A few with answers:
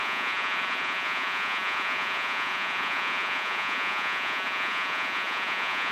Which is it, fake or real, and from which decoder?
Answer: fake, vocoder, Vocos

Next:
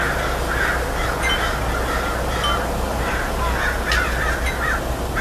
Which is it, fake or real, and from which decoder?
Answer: real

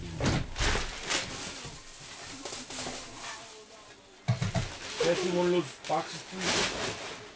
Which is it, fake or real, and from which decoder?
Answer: real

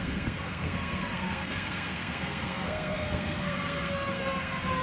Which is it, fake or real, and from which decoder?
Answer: fake, codec, SNAC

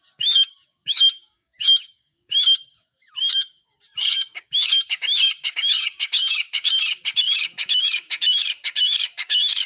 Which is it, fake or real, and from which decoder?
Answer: fake, codec, DAC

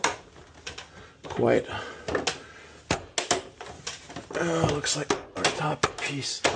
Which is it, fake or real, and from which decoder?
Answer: real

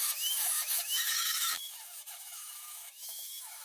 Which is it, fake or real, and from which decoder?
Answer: fake, autoencoder, DAC-VAE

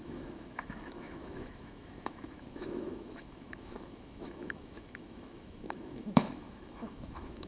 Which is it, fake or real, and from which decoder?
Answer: fake, autoencoder, DAC-VAE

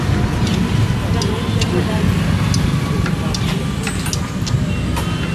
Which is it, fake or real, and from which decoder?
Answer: real